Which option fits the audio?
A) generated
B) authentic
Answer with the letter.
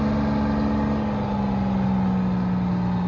B